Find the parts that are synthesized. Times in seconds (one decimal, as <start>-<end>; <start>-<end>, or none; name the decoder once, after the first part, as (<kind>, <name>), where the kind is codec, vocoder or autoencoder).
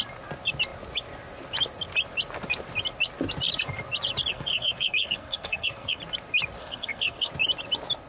4.3-6.0 (codec, SNAC); 6.6-7.3